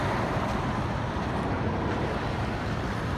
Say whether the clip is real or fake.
fake